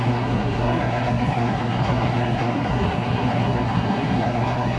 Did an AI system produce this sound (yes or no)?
yes